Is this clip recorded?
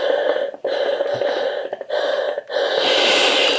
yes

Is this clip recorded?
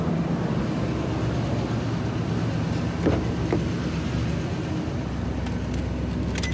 yes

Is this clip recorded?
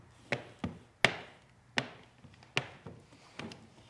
yes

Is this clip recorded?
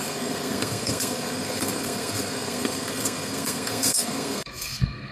no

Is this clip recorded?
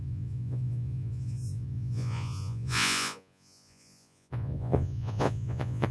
no